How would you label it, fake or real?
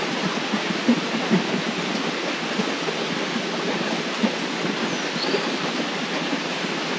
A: real